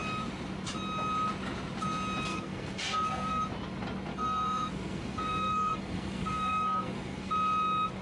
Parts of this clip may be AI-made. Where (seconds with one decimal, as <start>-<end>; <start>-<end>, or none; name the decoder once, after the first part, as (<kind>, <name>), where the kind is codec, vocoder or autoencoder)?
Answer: 2.3-3.4 (codec, SNAC); 4.1-7.3